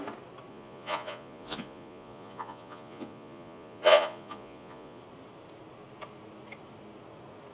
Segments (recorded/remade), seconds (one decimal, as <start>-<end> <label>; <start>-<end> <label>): 0.0-0.5 recorded; 0.5-5.0 remade; 5.0-7.5 recorded